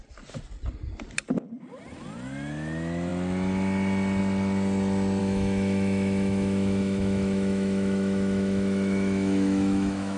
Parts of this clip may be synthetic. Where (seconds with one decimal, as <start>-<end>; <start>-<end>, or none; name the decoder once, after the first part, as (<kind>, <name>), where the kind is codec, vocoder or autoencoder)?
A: 5.2-10.2 (autoencoder, DAC-VAE)